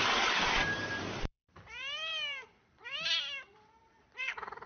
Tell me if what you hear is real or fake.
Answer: fake